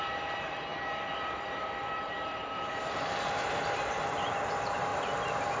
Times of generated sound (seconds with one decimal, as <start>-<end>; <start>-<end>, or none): 0.0-4.9